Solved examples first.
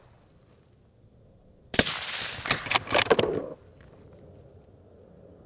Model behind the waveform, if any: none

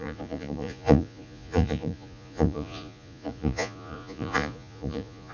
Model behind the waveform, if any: vocoder, Vocos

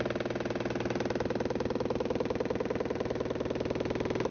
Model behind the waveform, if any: none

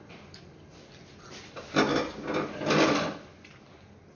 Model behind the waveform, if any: none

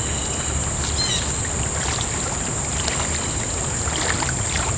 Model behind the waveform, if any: none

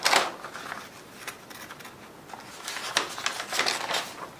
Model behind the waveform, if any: none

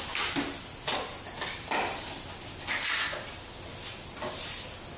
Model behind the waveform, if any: none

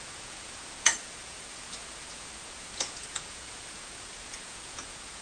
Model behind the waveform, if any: vocoder, Vocos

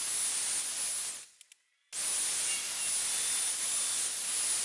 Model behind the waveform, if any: none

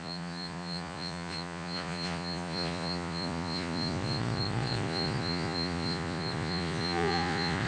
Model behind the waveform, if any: vocoder, Vocos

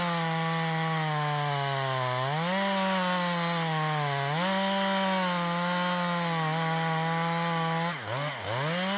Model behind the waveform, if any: none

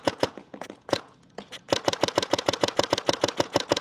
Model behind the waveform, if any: vocoder, Vocos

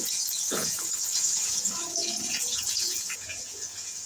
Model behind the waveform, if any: vocoder, Vocos